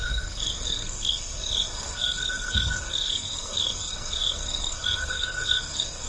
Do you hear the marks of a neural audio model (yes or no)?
yes